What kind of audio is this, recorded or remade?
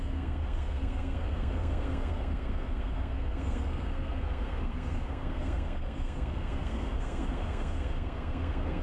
remade